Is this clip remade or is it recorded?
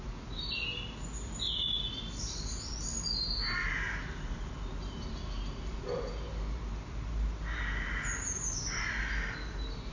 recorded